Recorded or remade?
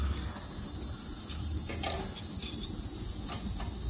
recorded